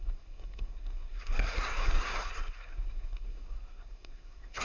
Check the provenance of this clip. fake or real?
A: fake